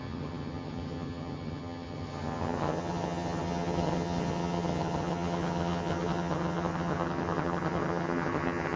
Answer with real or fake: fake